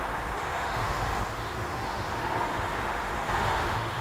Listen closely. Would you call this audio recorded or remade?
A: remade